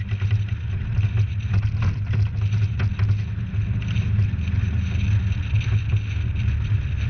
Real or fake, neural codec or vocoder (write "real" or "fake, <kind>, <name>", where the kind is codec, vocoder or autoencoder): real